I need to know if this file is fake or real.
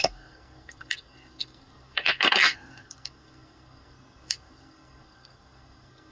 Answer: fake